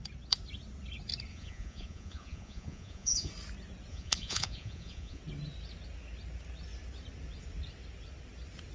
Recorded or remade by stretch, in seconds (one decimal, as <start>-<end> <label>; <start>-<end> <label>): 0.0-1.3 recorded; 1.3-3.3 remade; 3.3-3.9 recorded; 3.9-5.2 remade; 5.2-8.7 recorded

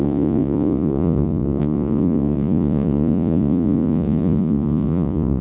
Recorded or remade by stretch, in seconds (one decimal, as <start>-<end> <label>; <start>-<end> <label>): 0.0-5.4 remade

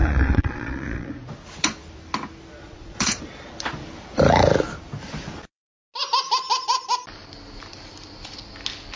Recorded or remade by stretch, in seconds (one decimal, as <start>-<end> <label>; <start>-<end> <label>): 0.0-1.1 remade; 1.1-2.6 recorded; 2.6-3.2 remade; 3.2-9.0 recorded

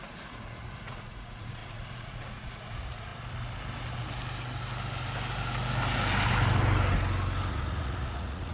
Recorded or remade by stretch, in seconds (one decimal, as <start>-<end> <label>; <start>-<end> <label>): 0.0-3.1 remade; 3.1-7.5 recorded; 7.5-8.5 remade

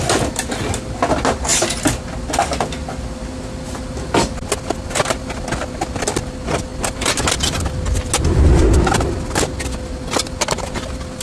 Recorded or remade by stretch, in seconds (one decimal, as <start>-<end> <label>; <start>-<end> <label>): 0.0-11.2 recorded

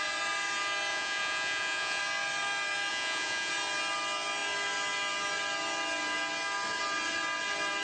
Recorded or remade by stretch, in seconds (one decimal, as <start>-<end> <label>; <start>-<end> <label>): 0.0-0.9 recorded; 0.9-2.0 remade; 2.0-2.9 recorded; 2.9-3.5 remade; 3.5-7.8 recorded